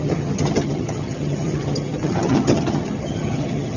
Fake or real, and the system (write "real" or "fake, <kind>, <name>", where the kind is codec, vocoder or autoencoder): fake, vocoder, HiFi-GAN